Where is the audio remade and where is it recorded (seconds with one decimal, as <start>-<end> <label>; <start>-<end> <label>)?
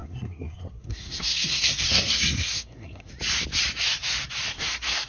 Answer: 0.0-3.1 remade; 3.1-4.5 recorded; 4.5-5.1 remade